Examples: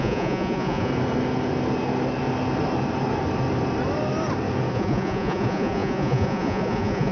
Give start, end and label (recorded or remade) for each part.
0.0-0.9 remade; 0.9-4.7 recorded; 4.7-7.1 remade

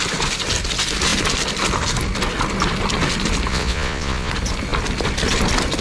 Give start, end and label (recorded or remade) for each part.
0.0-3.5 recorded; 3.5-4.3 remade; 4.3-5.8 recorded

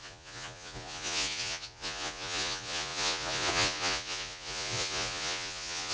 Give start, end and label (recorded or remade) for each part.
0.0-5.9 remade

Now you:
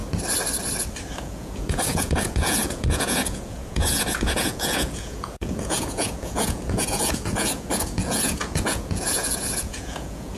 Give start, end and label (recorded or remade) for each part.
0.0-1.2 recorded; 1.2-10.4 remade

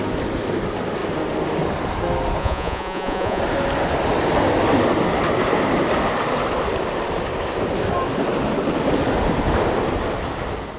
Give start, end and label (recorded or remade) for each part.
0.0-2.4 recorded; 2.4-3.4 remade; 3.4-10.8 recorded